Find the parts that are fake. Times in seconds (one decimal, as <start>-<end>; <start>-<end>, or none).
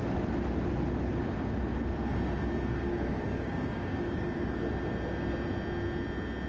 2.9-4.6